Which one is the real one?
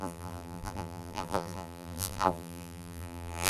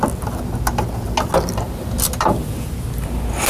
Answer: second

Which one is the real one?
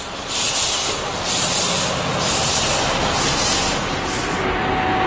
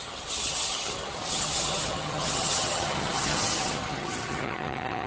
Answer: first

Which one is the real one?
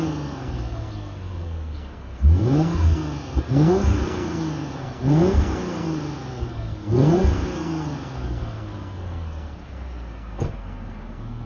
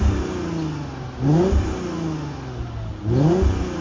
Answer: second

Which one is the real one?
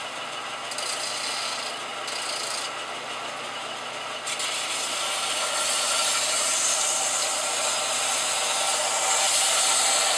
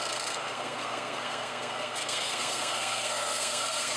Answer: first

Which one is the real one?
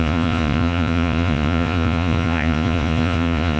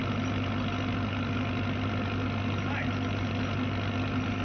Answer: second